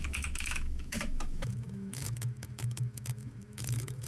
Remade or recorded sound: remade